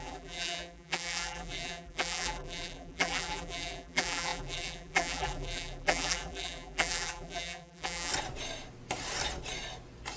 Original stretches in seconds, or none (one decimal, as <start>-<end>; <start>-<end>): 8.1-10.2

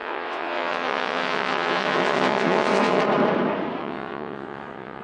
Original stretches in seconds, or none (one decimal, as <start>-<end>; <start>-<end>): 3.0-3.8